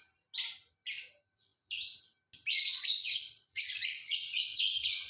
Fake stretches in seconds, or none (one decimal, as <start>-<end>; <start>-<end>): 2.5-5.1